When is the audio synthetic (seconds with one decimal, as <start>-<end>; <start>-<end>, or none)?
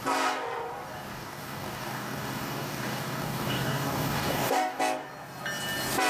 1.1-4.8